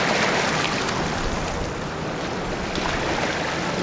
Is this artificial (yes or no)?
no